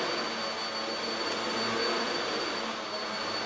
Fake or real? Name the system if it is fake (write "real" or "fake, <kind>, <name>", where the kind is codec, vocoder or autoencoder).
real